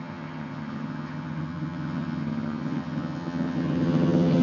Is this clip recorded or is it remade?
remade